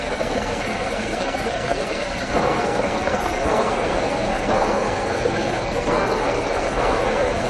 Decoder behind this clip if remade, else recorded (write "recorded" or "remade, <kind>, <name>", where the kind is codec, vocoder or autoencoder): remade, codec, SNAC